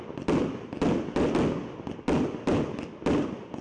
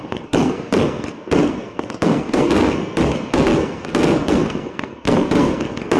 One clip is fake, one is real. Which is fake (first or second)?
second